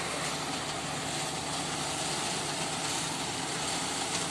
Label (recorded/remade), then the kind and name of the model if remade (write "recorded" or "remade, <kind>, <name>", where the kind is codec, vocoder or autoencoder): recorded